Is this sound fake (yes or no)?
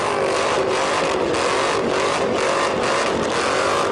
no